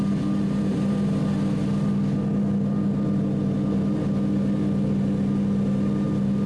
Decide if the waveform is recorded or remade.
recorded